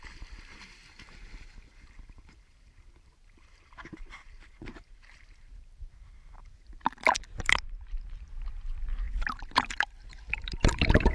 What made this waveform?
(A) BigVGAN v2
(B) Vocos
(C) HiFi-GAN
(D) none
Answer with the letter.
A